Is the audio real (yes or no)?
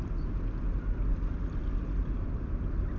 yes